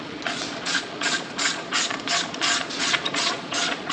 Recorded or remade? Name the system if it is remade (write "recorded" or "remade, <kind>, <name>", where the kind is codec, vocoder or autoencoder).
remade, vocoder, Vocos